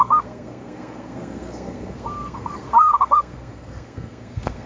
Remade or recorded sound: remade